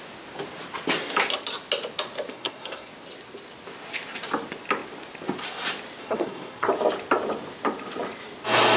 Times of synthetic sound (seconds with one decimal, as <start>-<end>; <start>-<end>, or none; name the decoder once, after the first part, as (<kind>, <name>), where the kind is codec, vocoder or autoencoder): 2.3-2.9 (codec, SNAC); 6.0-6.7